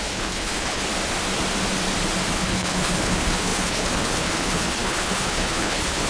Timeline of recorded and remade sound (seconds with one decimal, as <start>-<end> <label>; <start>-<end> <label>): 0.0-0.9 remade; 0.9-2.3 recorded; 2.3-6.1 remade